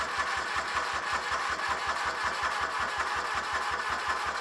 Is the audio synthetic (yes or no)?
no